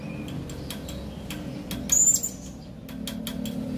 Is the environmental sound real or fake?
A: real